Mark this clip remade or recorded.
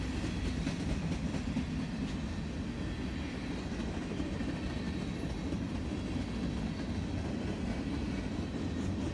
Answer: recorded